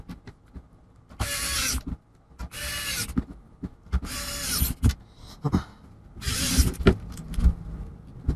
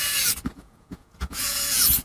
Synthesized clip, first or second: second